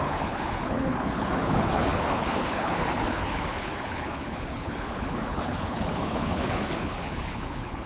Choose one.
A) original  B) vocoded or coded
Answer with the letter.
B